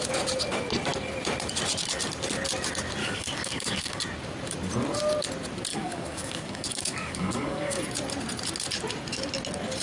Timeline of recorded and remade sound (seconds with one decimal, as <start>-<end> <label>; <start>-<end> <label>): 0.0-3.0 recorded; 3.0-4.0 remade; 4.0-5.7 recorded; 5.7-7.8 remade; 7.8-9.8 recorded